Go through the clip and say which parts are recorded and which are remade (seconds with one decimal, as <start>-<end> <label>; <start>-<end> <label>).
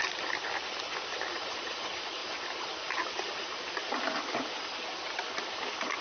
0.0-1.3 recorded; 1.3-2.2 remade; 2.2-6.0 recorded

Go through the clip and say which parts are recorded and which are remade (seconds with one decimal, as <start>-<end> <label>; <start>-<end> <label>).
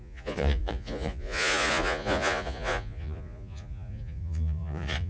0.0-5.1 remade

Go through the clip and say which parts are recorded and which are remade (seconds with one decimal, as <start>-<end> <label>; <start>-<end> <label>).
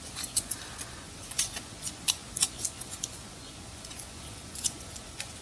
0.0-5.4 remade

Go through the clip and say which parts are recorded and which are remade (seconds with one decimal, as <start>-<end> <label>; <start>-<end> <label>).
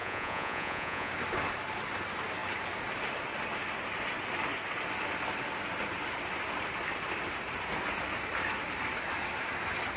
0.0-1.1 remade; 1.1-10.0 recorded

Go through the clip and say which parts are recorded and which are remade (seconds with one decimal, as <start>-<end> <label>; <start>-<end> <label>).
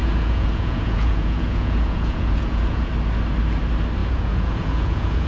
0.0-2.9 remade; 2.9-4.0 recorded; 4.0-5.3 remade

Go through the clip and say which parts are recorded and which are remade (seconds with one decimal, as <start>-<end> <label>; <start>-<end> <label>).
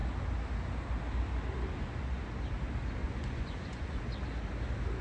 0.0-3.0 recorded; 3.0-4.0 remade; 4.0-5.0 recorded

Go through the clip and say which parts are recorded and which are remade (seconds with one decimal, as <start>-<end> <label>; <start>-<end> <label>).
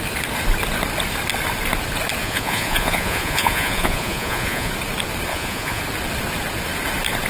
0.0-2.2 recorded; 2.2-4.7 remade; 4.7-5.3 recorded; 5.3-5.8 remade; 5.8-7.3 recorded